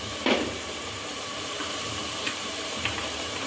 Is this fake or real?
fake